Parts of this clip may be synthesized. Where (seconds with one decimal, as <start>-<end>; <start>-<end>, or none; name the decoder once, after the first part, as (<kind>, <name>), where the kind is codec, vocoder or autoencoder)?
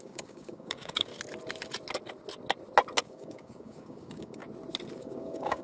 0.0-1.1 (codec, DAC); 3.0-4.4; 5.0-5.6